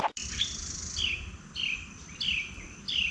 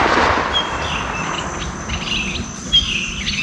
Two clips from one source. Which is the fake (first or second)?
first